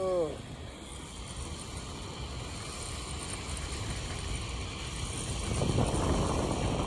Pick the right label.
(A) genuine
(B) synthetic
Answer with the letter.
A